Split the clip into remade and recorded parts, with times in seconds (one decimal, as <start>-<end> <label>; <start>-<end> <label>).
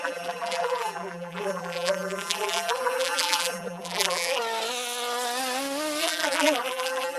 0.0-4.4 remade; 4.4-6.0 recorded; 6.0-7.2 remade